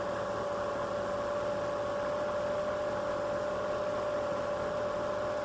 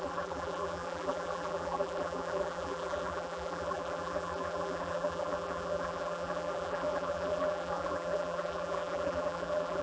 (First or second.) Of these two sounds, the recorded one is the first